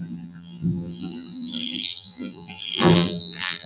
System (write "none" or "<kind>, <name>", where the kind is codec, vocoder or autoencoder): vocoder, BigVGAN v2